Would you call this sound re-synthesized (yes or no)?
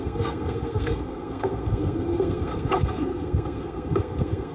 yes